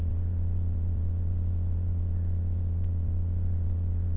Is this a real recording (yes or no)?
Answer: no